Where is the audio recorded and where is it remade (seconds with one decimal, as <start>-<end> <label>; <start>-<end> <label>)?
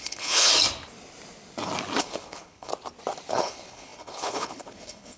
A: 0.0-0.5 remade; 0.5-2.0 recorded; 2.0-2.7 remade; 2.7-3.3 recorded; 3.3-5.2 remade